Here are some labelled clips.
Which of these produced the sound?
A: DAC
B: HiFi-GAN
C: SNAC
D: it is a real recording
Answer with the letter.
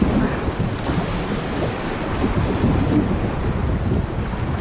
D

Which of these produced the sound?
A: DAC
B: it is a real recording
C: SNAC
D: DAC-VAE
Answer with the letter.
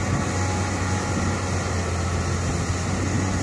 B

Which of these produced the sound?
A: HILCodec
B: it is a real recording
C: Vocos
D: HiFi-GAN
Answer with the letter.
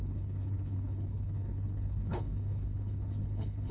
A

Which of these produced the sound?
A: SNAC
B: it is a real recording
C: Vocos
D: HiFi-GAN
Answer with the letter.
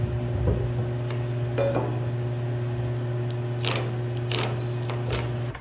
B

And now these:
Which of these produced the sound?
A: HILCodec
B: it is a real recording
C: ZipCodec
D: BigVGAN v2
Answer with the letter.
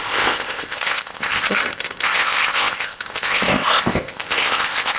C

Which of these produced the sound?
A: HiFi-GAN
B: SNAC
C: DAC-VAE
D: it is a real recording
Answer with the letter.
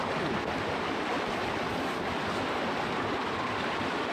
D